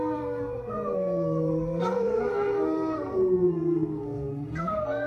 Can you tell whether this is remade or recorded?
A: remade